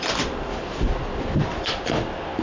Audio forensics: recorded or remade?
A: recorded